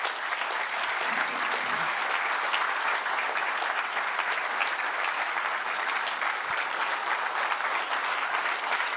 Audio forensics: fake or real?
real